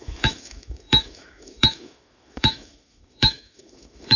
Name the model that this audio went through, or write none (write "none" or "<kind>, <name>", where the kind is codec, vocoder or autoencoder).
autoencoder, DAC-VAE